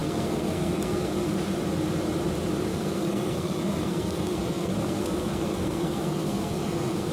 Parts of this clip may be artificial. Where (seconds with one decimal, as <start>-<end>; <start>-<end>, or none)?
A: 0.0-1.3; 2.7-7.1